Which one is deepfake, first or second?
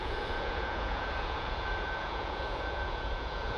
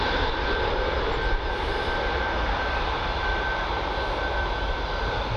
first